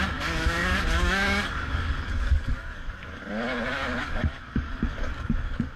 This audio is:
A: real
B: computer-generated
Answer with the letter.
B